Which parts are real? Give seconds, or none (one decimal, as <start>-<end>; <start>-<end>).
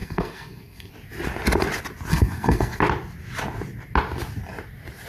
0.9-2.1; 2.8-5.1